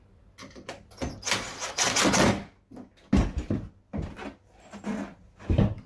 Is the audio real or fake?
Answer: real